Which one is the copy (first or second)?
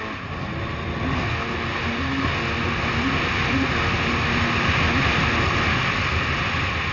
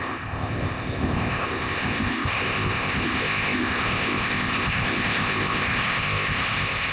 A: second